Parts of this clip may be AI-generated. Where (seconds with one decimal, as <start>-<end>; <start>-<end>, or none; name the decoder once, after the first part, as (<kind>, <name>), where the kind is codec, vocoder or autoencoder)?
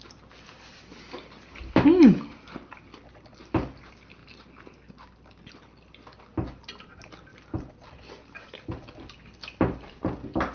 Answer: none